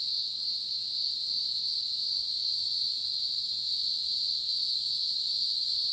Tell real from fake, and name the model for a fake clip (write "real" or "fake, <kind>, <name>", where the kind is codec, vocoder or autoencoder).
real